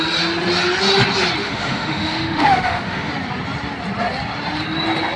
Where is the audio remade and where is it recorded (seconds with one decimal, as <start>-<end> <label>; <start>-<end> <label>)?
0.0-1.4 recorded; 1.4-3.1 remade; 3.1-5.2 recorded